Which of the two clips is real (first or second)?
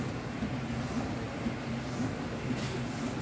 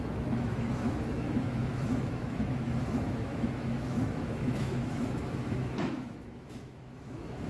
first